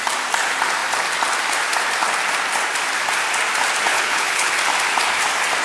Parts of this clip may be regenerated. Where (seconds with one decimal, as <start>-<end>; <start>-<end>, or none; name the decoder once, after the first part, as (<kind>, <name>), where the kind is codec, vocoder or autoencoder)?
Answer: 3.9-4.5 (codec, HILCodec)